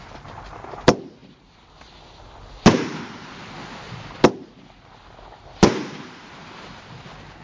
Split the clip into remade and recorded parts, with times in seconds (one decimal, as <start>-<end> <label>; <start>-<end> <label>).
0.0-7.4 recorded